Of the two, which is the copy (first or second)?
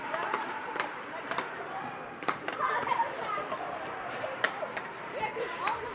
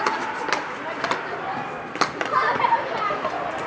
first